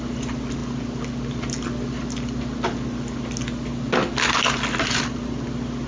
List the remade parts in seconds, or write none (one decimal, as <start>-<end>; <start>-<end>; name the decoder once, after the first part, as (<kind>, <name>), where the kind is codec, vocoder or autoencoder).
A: none